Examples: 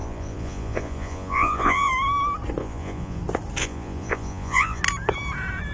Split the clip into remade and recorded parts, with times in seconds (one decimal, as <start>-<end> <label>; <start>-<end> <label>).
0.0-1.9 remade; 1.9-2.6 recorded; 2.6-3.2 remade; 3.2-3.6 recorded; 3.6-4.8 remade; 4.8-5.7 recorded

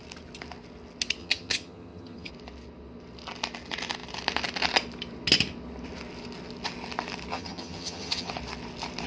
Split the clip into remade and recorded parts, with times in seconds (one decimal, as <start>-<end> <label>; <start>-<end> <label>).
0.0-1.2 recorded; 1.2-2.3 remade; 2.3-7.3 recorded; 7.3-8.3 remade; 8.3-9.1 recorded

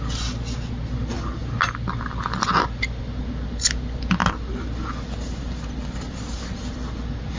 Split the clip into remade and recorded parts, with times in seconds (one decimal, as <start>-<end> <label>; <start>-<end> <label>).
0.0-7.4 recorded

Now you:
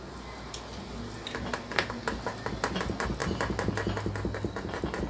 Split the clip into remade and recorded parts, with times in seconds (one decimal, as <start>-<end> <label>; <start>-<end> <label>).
0.0-5.1 recorded